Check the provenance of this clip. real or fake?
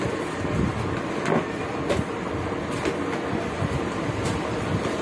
real